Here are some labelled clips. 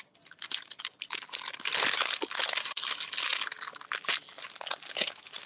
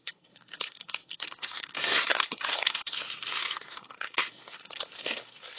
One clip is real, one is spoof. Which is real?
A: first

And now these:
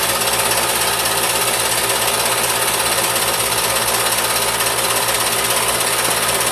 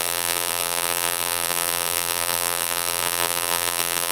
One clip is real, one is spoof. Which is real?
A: first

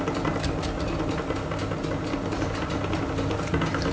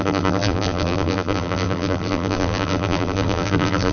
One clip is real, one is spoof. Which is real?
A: first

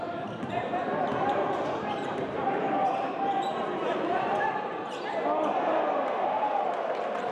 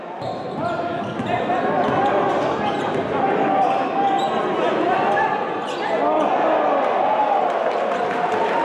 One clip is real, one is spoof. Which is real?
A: second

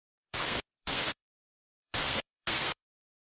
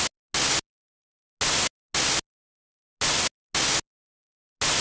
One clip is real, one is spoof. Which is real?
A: second